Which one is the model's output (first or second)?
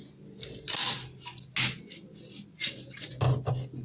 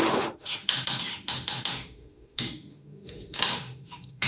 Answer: second